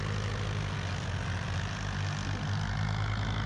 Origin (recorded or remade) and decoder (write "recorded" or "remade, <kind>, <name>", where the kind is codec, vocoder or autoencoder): recorded